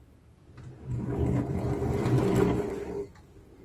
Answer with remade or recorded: recorded